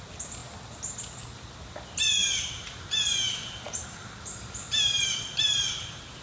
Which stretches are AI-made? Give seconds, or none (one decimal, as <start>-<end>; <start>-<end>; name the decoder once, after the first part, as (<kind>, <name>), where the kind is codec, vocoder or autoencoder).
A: 2.2-6.2 (vocoder, BigVGAN v2)